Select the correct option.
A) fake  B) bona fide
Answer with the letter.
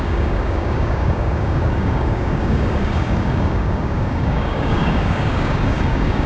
A